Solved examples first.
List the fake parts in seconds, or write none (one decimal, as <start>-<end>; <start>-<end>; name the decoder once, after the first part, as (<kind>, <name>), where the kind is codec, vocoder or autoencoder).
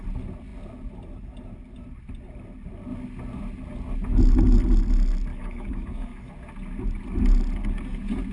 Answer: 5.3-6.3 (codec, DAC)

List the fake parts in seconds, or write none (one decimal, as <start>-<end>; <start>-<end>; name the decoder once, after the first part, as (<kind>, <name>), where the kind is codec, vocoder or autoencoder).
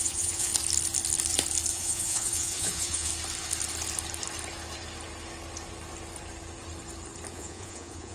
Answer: 0.0-0.5 (vocoder, Vocos); 1.7-3.1; 7.3-8.1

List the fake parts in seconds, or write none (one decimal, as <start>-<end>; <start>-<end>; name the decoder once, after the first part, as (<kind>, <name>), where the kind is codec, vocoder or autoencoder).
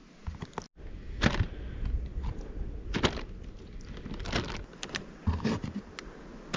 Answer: none